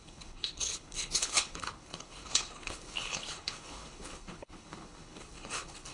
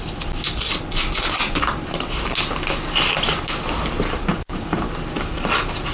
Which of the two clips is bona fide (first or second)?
second